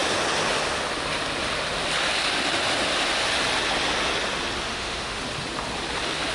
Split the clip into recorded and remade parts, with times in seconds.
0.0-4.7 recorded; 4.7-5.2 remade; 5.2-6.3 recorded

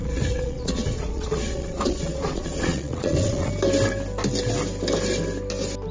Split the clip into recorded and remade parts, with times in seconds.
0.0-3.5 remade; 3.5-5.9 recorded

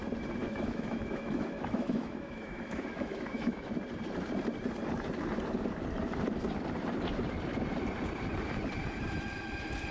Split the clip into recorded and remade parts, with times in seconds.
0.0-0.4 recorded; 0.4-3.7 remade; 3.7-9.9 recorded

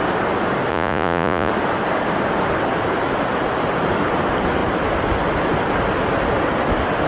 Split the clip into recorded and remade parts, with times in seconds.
0.0-0.7 recorded; 0.7-1.5 remade; 1.5-7.1 recorded